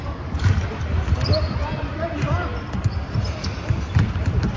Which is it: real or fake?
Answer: fake